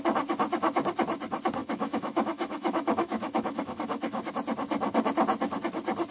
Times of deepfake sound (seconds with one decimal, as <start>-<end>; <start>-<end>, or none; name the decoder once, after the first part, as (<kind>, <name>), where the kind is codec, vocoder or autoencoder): 1.6-4.3 (autoencoder, DAC-VAE)